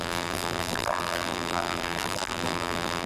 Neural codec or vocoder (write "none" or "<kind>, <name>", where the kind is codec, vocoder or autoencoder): vocoder, BigVGAN v2